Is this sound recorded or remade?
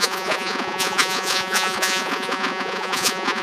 remade